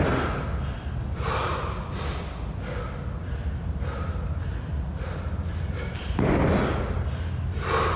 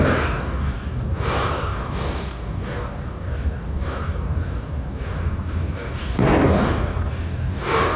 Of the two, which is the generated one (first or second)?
second